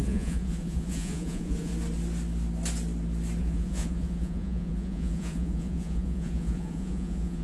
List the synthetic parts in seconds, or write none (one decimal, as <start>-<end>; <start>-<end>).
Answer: 0.0-1.7; 3.4-7.4